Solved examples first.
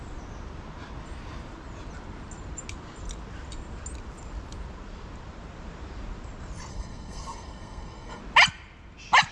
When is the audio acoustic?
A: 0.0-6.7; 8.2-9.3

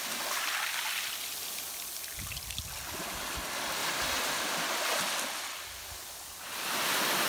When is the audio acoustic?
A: 0.0-3.8; 5.0-7.3

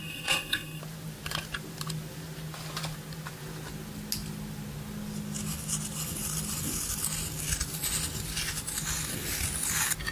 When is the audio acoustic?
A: 0.8-10.1

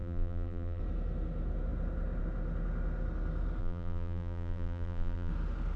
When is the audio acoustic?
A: 0.8-3.6; 5.3-5.8

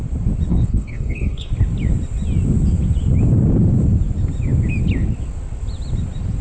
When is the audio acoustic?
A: 0.0-0.5; 1.5-6.4

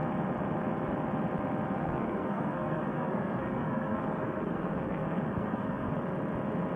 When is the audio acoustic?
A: 0.0-1.8; 5.9-6.8